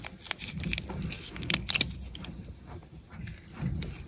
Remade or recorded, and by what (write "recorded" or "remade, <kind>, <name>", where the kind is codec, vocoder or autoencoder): recorded